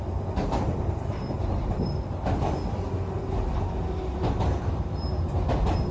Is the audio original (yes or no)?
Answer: yes